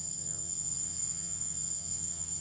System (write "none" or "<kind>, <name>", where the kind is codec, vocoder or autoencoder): vocoder, WaveNeXt